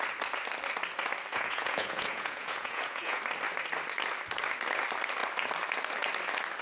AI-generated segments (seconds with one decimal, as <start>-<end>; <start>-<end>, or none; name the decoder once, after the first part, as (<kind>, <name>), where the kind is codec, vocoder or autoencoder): 1.3-3.2 (vocoder, Vocos)